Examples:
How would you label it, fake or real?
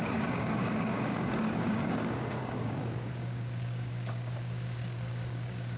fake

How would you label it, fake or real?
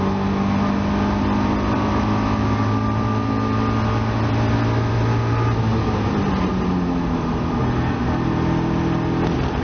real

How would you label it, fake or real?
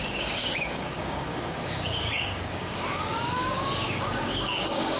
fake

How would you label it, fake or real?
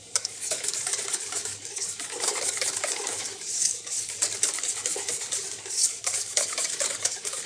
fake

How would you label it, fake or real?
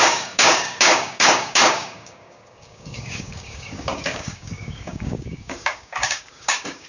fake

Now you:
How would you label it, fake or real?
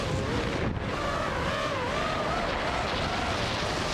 real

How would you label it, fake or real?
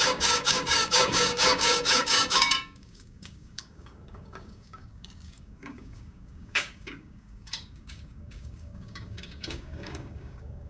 fake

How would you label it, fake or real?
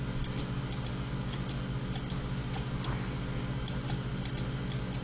real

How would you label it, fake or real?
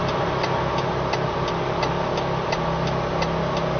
real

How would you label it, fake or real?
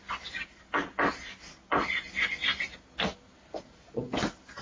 real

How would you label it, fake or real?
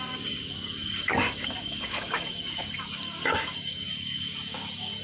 fake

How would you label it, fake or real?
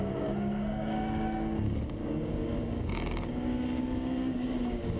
fake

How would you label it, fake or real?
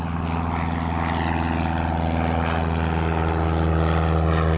real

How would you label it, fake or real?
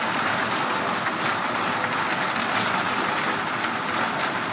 real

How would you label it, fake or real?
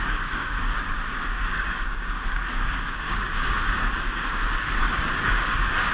fake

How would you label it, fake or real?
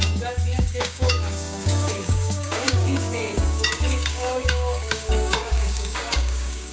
fake